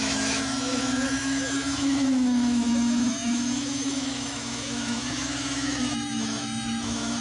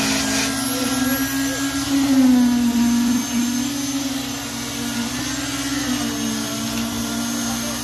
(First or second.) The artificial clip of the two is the first